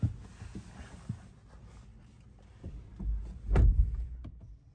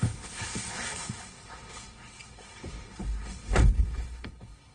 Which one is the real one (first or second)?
first